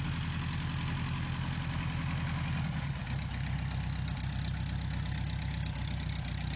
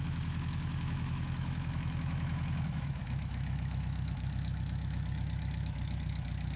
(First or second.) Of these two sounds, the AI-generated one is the second